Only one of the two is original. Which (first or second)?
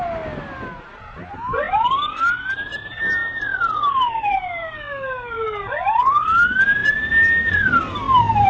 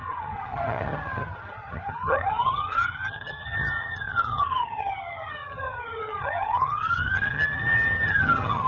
first